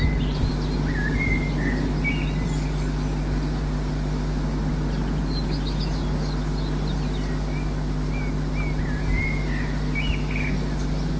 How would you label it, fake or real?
real